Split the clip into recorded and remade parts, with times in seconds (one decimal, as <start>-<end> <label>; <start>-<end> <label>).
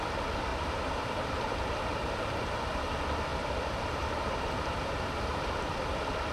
0.0-0.5 recorded; 0.5-2.6 remade; 2.6-3.3 recorded; 3.3-5.4 remade; 5.4-6.3 recorded